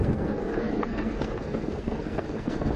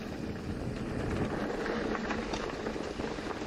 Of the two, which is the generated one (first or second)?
first